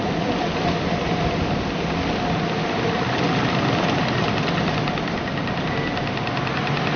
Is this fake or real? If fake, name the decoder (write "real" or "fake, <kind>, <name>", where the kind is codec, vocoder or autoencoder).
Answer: real